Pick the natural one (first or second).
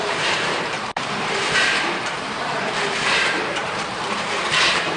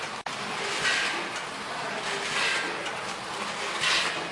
second